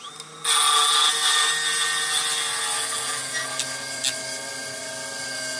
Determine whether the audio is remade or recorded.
recorded